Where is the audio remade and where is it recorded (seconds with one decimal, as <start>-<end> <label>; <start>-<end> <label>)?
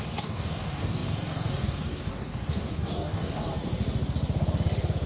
0.0-3.5 remade; 3.5-5.1 recorded